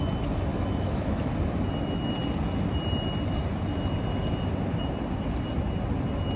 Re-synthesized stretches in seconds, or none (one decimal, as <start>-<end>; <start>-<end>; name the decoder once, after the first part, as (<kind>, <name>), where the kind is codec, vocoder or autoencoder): 0.5-1.3 (autoencoder, DAC-VAE)